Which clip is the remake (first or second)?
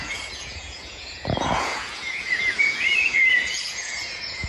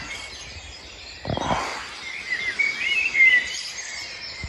first